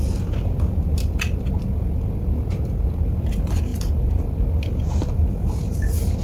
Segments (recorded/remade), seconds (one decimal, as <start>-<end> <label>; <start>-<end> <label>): 0.0-3.7 recorded; 3.7-4.3 remade; 4.3-6.2 recorded